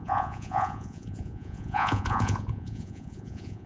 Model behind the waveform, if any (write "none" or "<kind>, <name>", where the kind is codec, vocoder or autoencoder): vocoder, Vocos